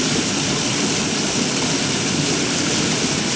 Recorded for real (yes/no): yes